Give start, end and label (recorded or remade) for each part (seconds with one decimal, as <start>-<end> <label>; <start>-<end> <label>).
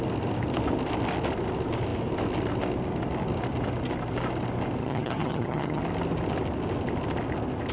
0.0-4.8 recorded; 4.8-5.8 remade; 5.8-7.7 recorded